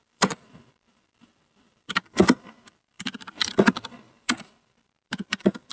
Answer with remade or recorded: remade